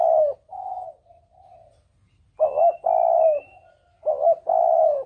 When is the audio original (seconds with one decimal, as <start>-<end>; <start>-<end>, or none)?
0.0-5.1